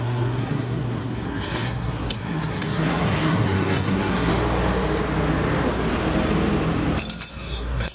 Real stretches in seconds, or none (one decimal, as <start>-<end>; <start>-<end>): 4.3-7.3